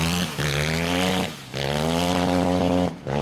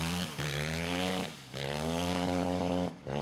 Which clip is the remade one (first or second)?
second